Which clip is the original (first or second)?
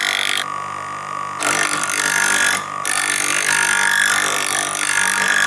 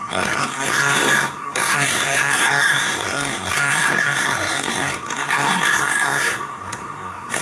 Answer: first